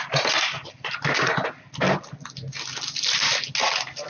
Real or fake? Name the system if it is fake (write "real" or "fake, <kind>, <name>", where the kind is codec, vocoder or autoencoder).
real